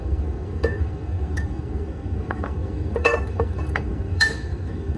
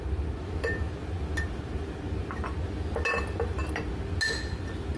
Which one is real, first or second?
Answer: second